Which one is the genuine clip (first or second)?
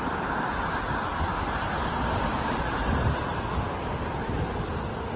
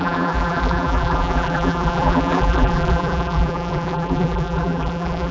first